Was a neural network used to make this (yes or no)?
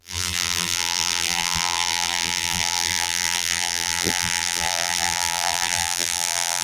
yes